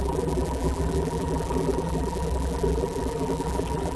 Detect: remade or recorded remade